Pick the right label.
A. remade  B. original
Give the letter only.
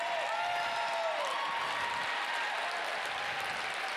B